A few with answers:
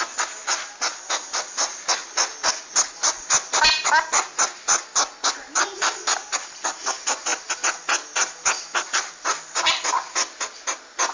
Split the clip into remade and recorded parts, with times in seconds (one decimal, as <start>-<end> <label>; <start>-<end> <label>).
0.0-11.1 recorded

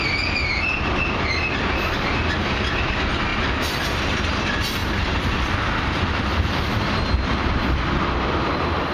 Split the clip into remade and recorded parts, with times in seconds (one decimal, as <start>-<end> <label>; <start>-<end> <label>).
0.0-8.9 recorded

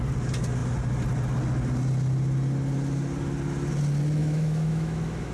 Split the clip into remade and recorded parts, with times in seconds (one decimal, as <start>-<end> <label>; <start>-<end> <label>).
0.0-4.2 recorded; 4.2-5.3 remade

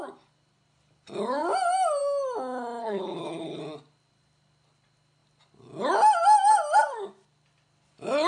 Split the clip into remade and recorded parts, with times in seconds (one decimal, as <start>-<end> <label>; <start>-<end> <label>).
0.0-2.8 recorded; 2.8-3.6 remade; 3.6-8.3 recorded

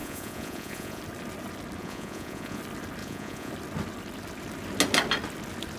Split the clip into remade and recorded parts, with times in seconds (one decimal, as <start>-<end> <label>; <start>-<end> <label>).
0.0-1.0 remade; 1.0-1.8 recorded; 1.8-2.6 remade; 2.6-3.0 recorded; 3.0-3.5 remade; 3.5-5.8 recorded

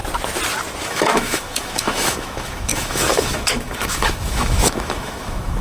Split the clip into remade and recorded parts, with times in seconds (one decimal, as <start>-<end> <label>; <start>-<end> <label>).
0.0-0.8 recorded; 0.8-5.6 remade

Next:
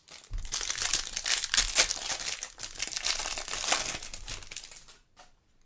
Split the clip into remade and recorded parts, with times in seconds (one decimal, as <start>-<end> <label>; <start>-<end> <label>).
0.0-5.7 recorded

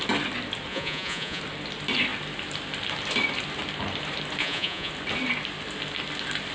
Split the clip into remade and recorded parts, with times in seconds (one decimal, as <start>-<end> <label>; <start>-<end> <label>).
0.0-0.7 recorded; 0.7-1.4 remade; 1.4-4.4 recorded; 4.4-4.9 remade; 4.9-6.5 recorded